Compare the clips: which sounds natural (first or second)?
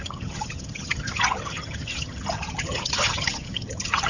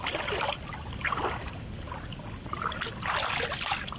second